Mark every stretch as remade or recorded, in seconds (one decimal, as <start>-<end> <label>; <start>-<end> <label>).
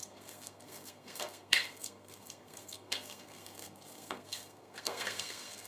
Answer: 0.0-5.7 remade